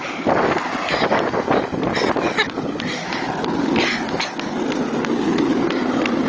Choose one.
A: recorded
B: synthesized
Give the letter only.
A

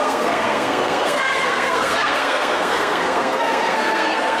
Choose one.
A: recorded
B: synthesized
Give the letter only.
B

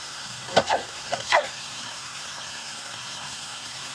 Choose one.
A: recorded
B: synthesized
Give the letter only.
B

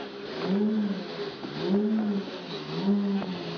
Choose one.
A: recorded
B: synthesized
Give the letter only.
A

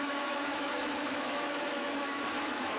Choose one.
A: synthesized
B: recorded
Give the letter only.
A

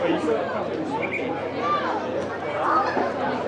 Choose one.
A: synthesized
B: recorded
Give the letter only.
B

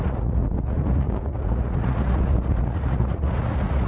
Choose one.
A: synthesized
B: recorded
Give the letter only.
A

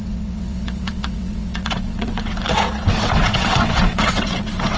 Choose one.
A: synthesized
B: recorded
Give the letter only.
A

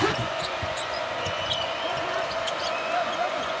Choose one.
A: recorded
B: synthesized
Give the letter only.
B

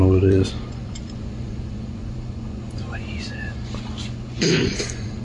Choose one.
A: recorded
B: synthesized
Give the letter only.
B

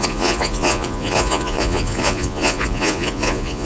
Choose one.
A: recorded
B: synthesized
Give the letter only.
B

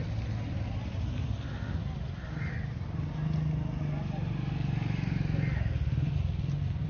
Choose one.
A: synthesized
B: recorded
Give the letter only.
B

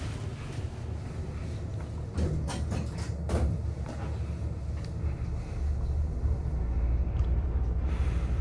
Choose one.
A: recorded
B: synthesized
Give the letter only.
A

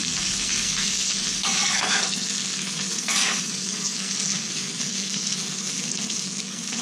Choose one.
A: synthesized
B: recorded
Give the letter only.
A